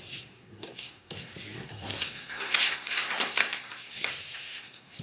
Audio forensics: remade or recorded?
remade